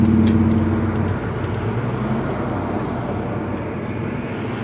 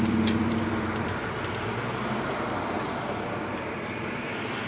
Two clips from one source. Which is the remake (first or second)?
second